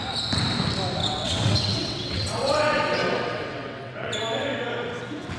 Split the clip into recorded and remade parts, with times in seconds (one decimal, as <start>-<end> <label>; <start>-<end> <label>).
0.0-1.0 recorded; 1.0-4.2 remade; 4.2-5.4 recorded

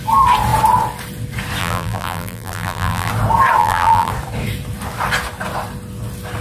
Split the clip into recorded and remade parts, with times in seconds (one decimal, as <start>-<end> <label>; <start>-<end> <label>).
0.0-1.6 recorded; 1.6-3.1 remade; 3.1-3.6 recorded; 3.6-4.1 remade; 4.1-6.4 recorded

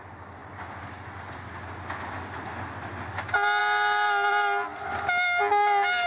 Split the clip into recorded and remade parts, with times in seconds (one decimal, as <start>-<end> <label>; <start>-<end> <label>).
0.0-6.1 recorded